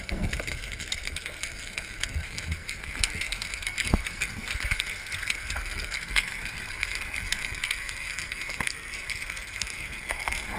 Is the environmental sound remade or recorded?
remade